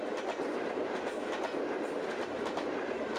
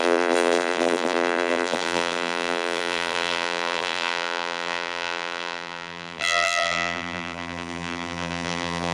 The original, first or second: first